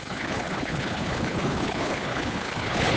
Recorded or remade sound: remade